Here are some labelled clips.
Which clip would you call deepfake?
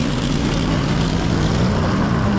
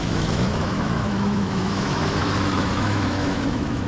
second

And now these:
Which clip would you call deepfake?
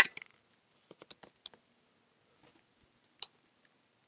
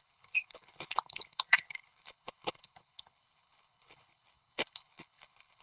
second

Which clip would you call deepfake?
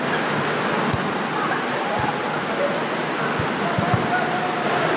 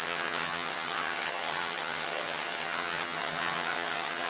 second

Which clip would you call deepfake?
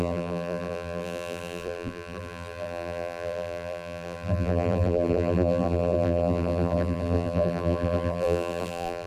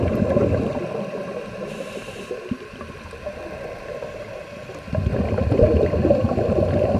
first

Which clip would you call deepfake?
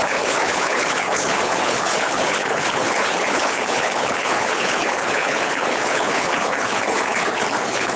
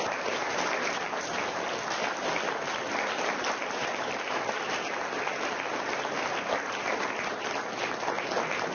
first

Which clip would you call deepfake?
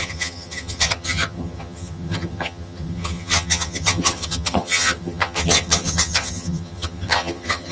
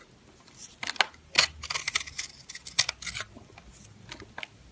first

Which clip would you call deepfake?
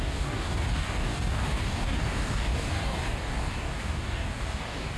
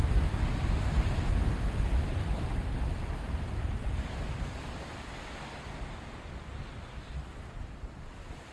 first